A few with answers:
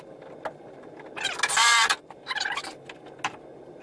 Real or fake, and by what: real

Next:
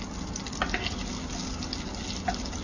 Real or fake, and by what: real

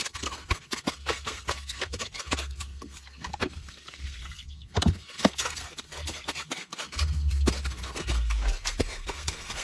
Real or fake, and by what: fake, codec, SNAC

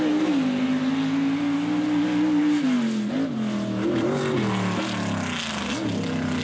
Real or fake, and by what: real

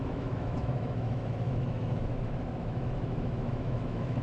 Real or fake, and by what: fake, autoencoder, DAC-VAE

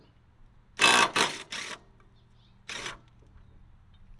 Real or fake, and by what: real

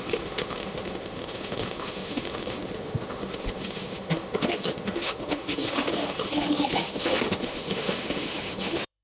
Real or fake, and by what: fake, autoencoder, DAC-VAE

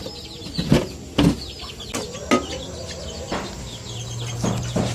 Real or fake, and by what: real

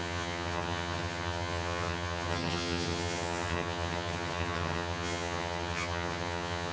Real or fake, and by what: fake, vocoder, HiFi-GAN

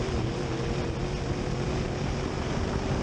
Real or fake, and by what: real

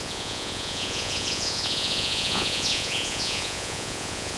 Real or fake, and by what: fake, vocoder, Vocos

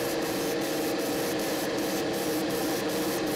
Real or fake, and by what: real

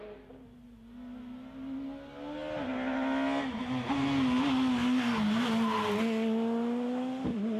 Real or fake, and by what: real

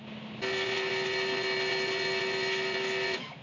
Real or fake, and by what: real